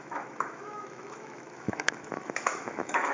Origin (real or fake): fake